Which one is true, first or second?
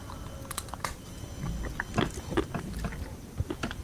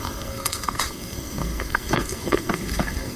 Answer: first